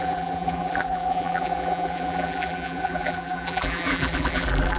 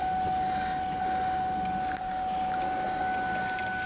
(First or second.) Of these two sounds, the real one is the second